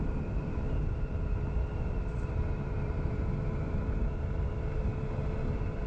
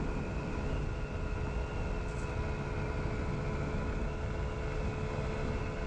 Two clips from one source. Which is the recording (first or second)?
second